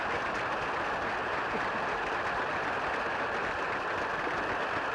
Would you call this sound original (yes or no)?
yes